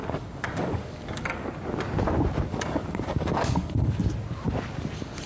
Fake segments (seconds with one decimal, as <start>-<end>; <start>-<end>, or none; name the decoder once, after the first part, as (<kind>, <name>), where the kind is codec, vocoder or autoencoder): 0.0-1.5 (codec, DAC); 2.5-4.0